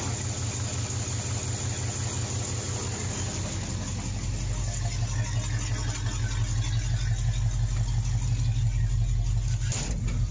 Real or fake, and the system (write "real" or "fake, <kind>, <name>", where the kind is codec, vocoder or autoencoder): real